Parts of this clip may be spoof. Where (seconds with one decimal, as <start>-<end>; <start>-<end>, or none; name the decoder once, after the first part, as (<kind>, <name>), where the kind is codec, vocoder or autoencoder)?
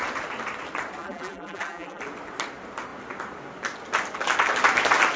1.0-2.0 (vocoder, BigVGAN v2)